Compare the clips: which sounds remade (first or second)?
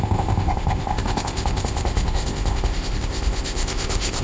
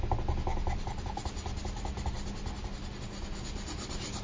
first